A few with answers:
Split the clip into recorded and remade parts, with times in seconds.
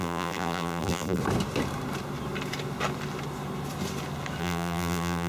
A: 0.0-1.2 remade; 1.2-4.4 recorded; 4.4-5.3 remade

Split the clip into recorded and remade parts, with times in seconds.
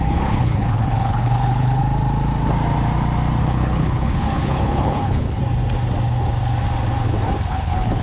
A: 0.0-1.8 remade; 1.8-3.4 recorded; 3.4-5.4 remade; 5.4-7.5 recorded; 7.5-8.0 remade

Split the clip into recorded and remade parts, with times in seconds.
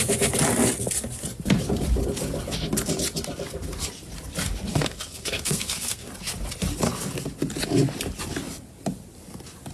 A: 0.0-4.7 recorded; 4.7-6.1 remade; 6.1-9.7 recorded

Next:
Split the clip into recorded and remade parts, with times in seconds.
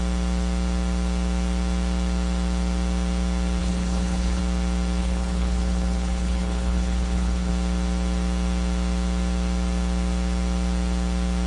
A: 0.0-3.6 recorded; 3.6-4.4 remade; 4.4-5.0 recorded; 5.0-7.5 remade; 7.5-11.5 recorded